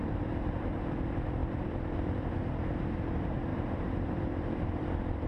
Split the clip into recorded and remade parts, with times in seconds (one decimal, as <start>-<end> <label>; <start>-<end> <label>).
0.0-5.3 remade